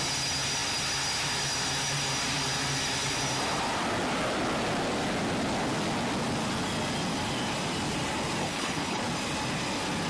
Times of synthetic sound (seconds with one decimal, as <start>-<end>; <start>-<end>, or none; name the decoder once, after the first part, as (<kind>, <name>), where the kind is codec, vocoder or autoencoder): 8.4-9.0 (codec, HILCodec)